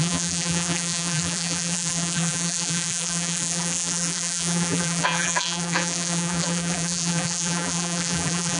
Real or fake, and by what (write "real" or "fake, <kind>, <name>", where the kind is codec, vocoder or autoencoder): fake, vocoder, BigVGAN v2